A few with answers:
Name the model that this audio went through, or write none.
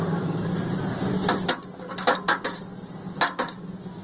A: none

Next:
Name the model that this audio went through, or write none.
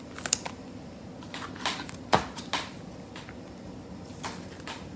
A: none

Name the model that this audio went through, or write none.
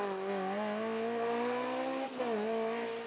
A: none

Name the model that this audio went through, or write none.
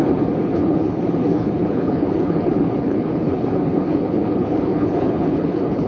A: codec, HILCodec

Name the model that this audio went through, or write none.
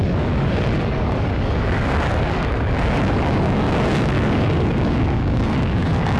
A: codec, DAC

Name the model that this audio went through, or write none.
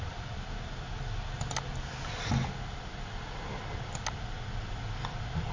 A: none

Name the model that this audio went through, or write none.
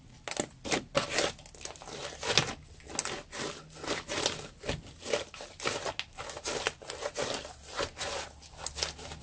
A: none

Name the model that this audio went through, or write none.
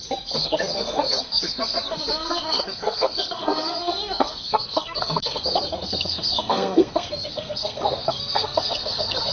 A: codec, SNAC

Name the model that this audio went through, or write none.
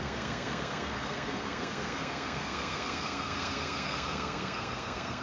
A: codec, SNAC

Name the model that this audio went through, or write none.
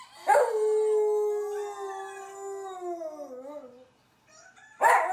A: none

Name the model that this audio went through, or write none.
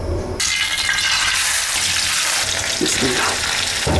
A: none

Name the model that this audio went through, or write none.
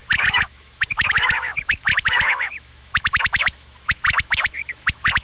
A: autoencoder, DAC-VAE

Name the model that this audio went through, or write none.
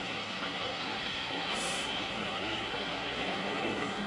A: codec, SNAC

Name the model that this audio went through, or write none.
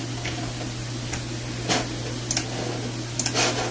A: none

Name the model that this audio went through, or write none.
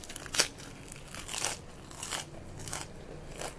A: none